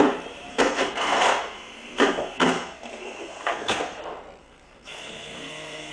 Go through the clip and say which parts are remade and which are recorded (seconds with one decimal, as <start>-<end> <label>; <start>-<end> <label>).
0.0-0.5 recorded; 0.5-4.0 remade; 4.0-4.4 recorded; 4.4-5.9 remade